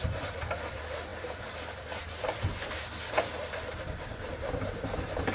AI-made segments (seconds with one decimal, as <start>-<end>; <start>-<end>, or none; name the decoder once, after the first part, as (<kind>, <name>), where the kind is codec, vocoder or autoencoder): 1.1-4.3 (vocoder, BigVGAN v2)